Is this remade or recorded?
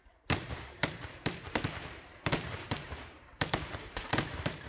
remade